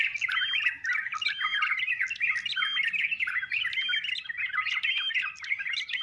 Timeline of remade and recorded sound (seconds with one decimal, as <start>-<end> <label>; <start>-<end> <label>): 0.0-1.5 remade; 1.5-4.7 recorded; 4.7-6.0 remade